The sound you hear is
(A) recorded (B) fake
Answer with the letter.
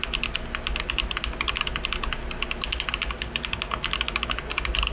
A